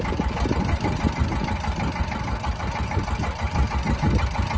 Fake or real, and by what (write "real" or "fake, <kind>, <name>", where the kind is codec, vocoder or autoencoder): real